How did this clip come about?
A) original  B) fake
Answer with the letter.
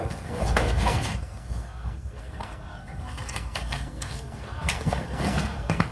B